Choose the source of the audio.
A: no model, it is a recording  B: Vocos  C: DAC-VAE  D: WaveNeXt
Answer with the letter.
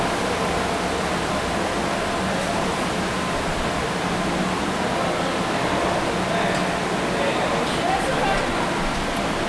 A